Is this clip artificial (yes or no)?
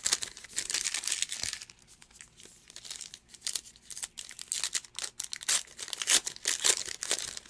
no